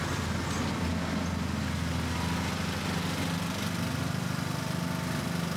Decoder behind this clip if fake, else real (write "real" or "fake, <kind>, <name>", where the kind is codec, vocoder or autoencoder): real